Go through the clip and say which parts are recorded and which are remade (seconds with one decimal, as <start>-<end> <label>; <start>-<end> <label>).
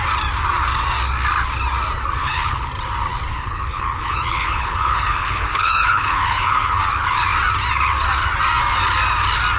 0.0-2.2 recorded; 2.2-2.7 remade; 2.7-3.3 recorded; 3.3-6.8 remade; 6.8-9.6 recorded